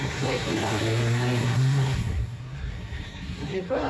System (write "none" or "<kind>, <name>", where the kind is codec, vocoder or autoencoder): codec, SNAC